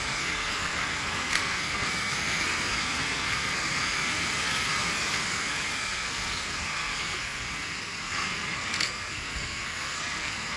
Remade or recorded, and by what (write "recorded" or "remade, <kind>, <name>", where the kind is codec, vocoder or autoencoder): remade, codec, SNAC